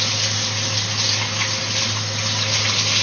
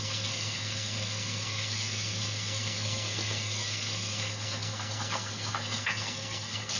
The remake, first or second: second